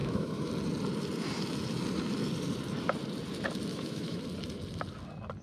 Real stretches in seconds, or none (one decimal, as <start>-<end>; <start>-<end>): 0.5-3.7; 4.2-5.4